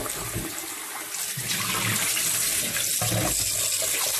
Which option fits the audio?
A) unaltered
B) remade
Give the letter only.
A